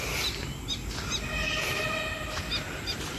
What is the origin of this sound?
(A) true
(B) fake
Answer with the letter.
A